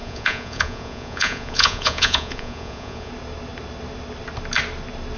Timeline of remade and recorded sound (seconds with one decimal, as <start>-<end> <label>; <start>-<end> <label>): 0.0-3.1 remade; 3.1-5.2 recorded